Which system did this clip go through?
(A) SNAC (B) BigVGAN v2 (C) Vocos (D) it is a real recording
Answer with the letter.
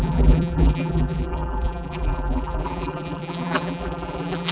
B